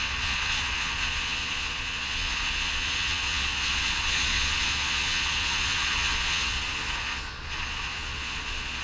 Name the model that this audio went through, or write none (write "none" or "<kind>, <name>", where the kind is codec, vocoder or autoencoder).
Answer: vocoder, Vocos